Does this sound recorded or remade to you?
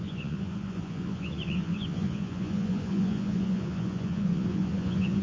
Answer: remade